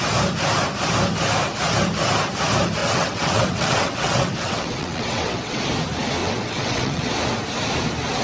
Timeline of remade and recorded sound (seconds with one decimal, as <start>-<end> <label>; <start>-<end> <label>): 0.0-2.8 recorded; 2.8-5.6 remade; 5.6-6.2 recorded; 6.2-7.1 remade; 7.1-8.2 recorded